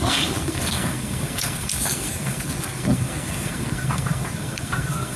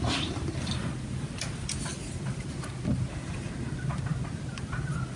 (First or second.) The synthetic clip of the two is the first